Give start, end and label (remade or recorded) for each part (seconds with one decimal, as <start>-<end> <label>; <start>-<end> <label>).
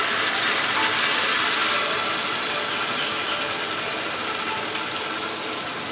0.0-5.9 recorded